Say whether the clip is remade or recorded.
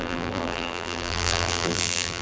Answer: remade